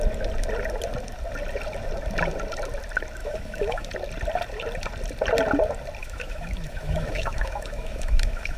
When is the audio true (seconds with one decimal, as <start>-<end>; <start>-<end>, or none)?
0.0-3.2; 3.9-6.0